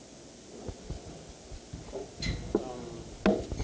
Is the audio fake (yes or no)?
no